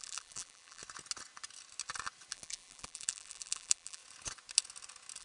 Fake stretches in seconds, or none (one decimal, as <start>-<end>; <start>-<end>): 0.0-0.8; 2.3-4.0